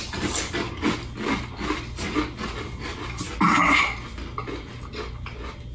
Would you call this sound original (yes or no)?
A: yes